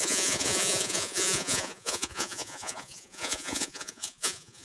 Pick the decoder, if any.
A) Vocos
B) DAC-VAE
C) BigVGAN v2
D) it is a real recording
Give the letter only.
A